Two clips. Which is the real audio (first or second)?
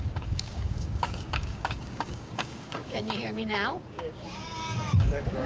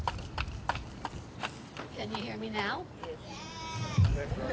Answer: second